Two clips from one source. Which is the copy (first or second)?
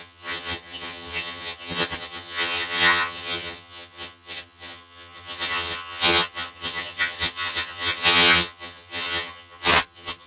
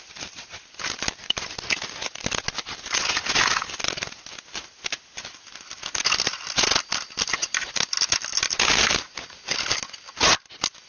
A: first